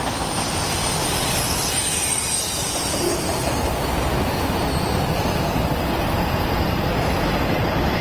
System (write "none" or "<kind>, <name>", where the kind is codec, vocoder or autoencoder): none